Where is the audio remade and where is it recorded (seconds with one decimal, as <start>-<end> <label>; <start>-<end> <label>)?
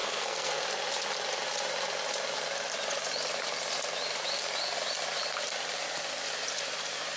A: 0.0-0.6 remade; 0.6-7.2 recorded